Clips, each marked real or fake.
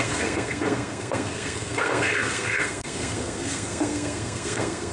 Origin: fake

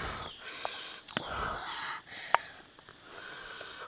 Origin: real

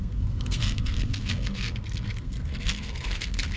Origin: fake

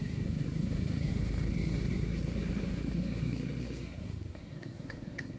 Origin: fake